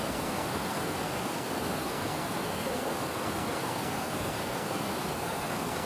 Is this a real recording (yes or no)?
no